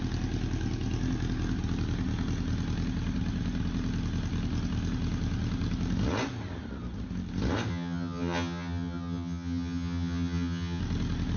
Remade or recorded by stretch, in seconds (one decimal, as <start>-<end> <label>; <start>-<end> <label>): 0.0-7.7 recorded; 7.7-10.8 remade; 10.8-11.4 recorded